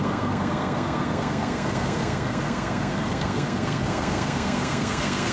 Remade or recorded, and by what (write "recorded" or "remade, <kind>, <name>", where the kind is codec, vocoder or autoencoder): remade, codec, SNAC